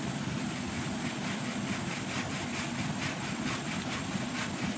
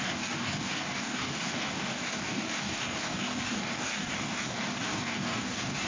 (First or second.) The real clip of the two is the first